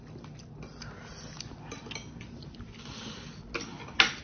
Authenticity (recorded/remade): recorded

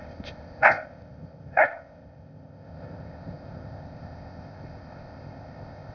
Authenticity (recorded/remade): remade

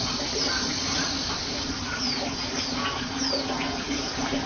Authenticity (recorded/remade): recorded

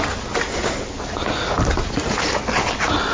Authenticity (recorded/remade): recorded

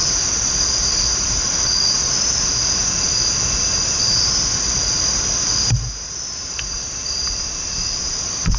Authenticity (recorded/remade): recorded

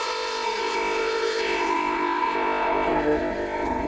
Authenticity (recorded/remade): remade